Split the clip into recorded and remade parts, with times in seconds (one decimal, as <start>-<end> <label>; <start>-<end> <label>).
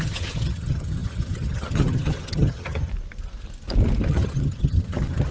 0.0-2.9 remade; 2.9-4.1 recorded; 4.1-5.3 remade